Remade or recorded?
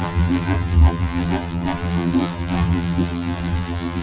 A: remade